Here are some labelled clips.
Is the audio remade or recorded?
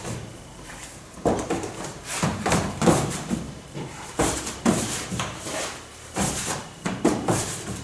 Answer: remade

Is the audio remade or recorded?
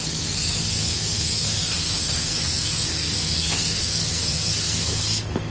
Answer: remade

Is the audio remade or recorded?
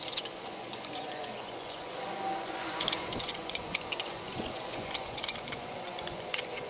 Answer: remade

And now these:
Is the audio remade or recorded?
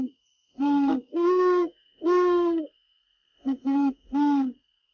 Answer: remade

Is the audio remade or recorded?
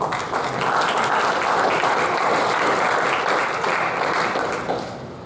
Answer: recorded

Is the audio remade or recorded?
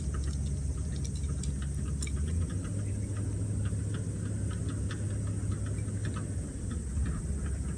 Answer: recorded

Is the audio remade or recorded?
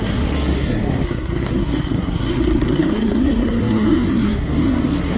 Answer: remade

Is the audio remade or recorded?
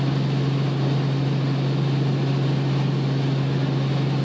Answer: recorded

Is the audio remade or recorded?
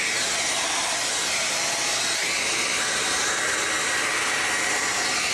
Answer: recorded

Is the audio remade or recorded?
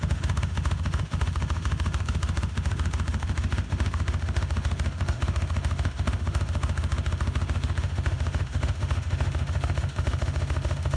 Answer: remade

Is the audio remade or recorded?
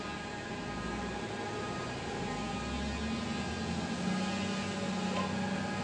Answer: recorded